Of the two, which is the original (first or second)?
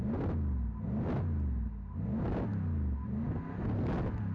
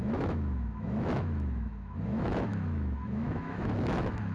first